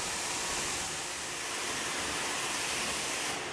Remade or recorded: recorded